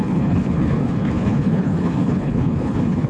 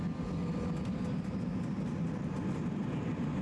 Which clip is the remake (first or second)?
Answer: first